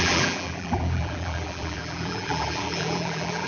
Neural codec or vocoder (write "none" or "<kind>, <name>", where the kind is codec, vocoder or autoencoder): vocoder, BigVGAN v2